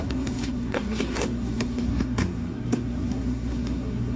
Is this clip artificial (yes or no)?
yes